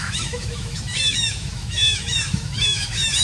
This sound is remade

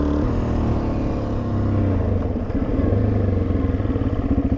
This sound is recorded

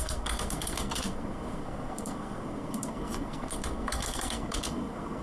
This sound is remade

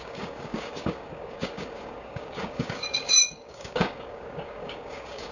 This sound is remade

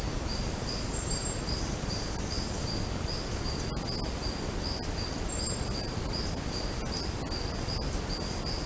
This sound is recorded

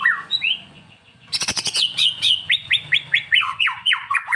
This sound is remade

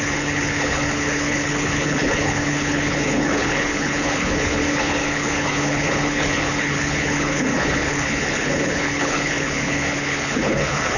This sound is remade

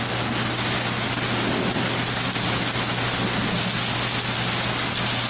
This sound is recorded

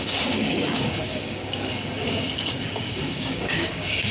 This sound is remade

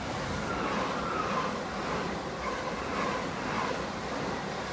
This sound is recorded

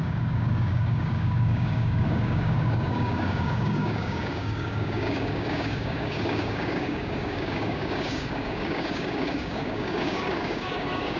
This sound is remade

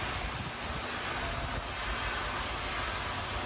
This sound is recorded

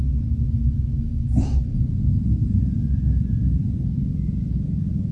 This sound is recorded